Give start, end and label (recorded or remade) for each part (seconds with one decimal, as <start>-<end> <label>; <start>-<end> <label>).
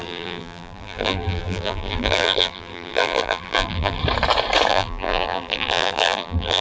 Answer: 0.0-4.0 remade; 4.0-4.7 recorded; 4.7-6.6 remade